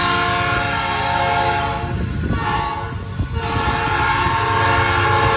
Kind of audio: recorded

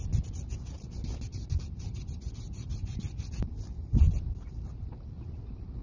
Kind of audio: recorded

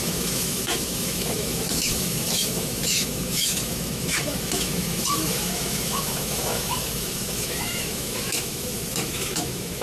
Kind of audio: remade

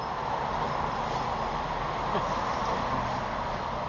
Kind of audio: recorded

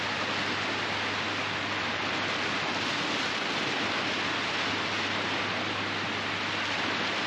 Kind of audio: recorded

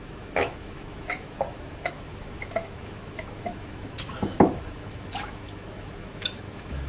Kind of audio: remade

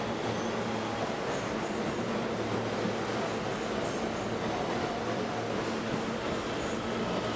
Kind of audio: recorded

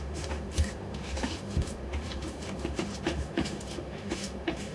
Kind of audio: remade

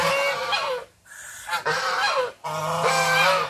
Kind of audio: recorded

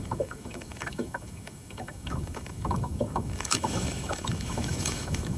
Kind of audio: remade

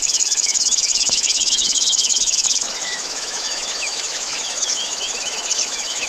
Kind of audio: remade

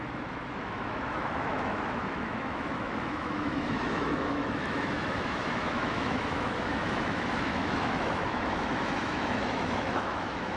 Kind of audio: remade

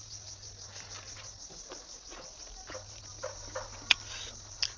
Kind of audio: recorded